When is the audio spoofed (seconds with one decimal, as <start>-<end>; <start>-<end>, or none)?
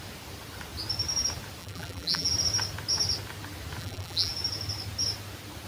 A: 1.6-2.3; 3.8-4.3